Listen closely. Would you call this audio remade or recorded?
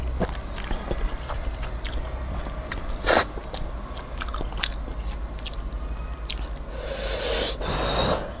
recorded